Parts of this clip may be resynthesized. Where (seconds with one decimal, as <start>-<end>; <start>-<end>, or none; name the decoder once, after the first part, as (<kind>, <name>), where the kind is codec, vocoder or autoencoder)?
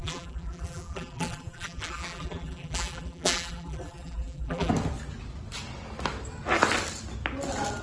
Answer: 0.0-4.7 (vocoder, BigVGAN v2)